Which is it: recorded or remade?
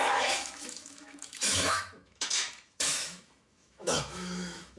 remade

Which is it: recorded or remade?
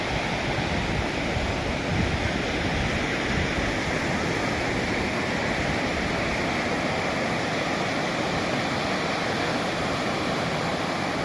recorded